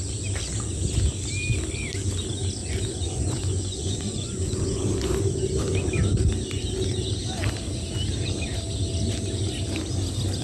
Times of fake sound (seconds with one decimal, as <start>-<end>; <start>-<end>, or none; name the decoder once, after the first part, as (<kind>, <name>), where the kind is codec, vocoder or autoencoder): 2.6-4.9 (vocoder, Vocos)